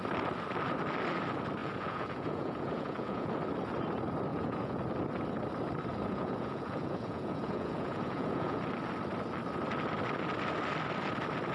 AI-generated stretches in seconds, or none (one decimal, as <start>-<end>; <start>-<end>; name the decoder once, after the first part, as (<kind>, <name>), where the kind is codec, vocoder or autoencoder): 1.6-3.3 (vocoder, Vocos); 4.3-4.8; 5.9-8.6